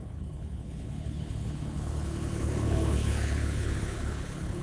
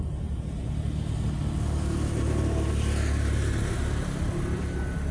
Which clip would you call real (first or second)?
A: second